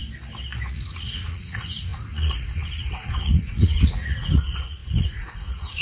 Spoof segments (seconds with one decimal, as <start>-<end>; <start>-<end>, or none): 0.7-5.8